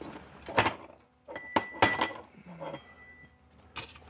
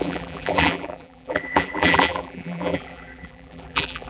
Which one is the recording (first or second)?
first